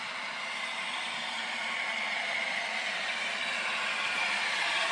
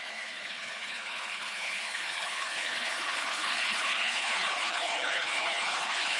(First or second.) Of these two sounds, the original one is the first